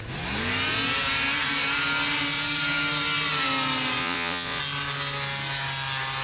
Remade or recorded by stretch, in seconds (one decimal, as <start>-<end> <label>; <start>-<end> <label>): 0.0-4.0 recorded; 4.0-4.6 remade; 4.6-6.2 recorded